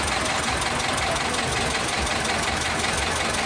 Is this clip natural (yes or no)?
yes